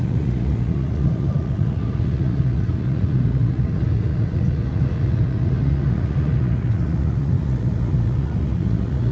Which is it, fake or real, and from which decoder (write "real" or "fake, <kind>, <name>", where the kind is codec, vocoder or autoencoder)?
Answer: fake, vocoder, Vocos